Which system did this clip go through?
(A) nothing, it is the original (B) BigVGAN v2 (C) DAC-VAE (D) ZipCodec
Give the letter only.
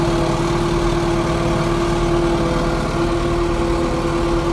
A